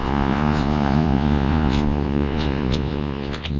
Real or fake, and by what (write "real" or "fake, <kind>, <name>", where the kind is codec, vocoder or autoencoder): fake, vocoder, Vocos